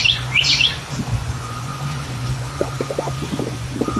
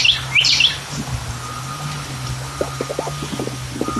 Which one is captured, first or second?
second